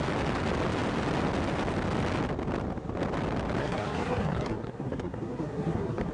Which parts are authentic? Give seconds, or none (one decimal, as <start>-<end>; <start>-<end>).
0.0-3.6